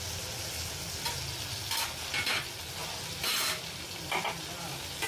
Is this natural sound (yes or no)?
yes